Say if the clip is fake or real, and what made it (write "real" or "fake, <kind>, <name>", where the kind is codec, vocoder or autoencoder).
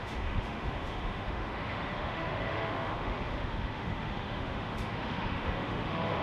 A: fake, autoencoder, DAC-VAE